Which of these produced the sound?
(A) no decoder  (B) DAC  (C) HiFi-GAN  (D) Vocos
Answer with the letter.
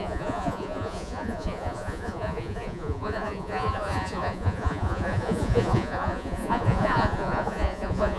D